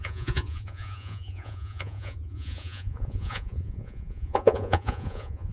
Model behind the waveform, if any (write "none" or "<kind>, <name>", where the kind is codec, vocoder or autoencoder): vocoder, Vocos